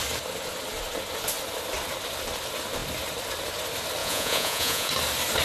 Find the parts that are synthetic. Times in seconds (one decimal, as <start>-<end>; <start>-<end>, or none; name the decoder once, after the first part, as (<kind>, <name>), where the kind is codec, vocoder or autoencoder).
4.0-4.9 (vocoder, Vocos)